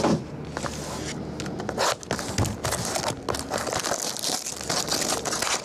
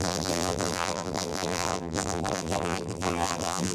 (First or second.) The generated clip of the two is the second